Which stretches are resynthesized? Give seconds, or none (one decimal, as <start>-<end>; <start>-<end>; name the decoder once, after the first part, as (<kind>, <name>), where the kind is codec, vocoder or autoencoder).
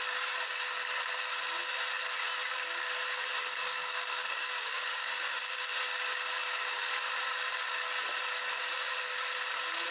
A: 3.5-5.7 (codec, DAC)